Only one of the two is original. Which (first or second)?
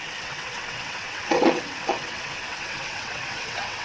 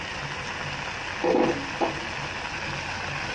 second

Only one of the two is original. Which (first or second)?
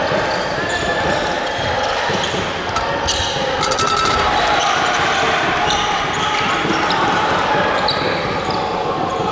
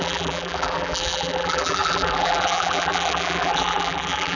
first